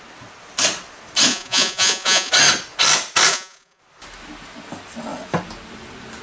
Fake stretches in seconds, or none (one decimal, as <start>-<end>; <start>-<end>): 1.3-2.3; 3.3-3.8

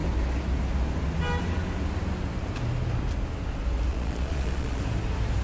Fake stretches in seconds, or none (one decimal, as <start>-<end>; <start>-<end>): 3.9-4.8

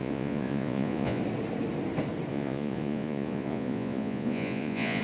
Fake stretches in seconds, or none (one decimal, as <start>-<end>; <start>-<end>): 0.0-1.2; 2.3-5.0

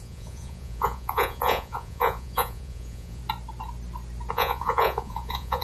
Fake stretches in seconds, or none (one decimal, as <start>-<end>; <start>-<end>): 0.0-3.2; 4.3-5.6

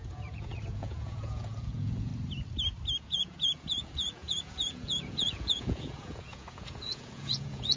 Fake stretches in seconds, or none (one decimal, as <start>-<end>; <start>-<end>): 0.0-2.1; 3.0-7.8

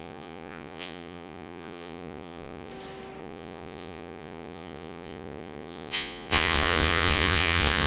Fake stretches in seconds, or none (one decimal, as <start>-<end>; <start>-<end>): 0.0-2.7; 3.2-7.9

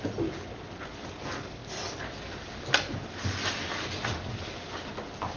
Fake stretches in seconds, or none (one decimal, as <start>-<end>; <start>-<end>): none